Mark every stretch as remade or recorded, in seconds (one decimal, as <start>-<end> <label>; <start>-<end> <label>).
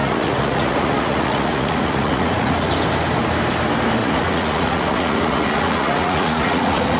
0.0-2.7 remade; 2.7-4.0 recorded; 4.0-7.0 remade